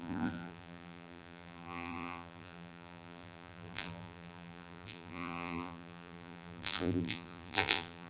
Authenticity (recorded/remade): remade